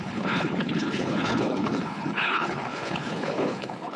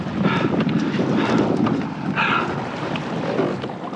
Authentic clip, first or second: second